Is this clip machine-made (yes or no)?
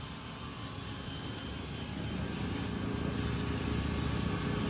no